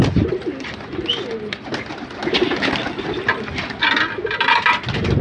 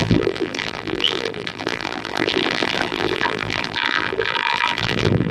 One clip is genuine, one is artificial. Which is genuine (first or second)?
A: first